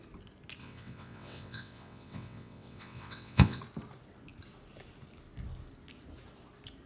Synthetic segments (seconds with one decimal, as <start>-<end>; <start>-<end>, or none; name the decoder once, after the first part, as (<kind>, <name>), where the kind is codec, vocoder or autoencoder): 0.6-3.6 (vocoder, WaveNeXt)